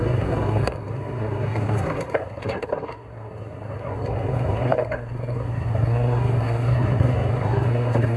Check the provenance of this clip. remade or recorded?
remade